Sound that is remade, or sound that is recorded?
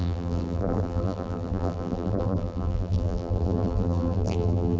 remade